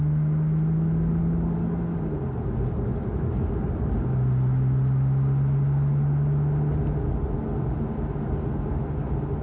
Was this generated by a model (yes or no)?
no